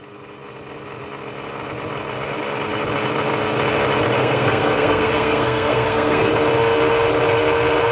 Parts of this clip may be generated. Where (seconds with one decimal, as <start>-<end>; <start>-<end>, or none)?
4.2-6.3